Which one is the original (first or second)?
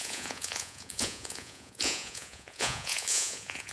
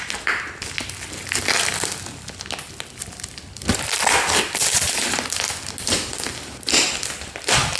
second